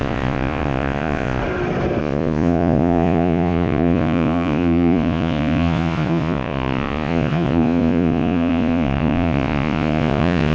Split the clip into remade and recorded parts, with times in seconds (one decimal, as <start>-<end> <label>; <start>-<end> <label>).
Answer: 0.0-1.4 remade; 1.4-2.0 recorded; 2.0-10.5 remade